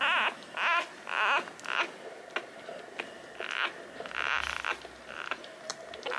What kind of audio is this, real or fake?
real